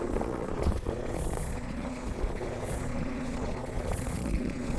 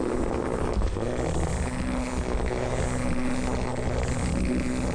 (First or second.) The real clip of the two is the second